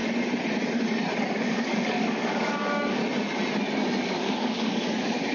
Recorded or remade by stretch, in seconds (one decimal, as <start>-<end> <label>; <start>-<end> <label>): 0.0-1.2 recorded; 1.2-3.0 remade; 3.0-4.0 recorded; 4.0-5.3 remade